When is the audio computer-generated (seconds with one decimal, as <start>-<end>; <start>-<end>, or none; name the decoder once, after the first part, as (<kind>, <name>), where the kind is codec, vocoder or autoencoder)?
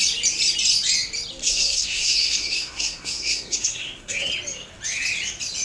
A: 1.4-4.3 (codec, SNAC)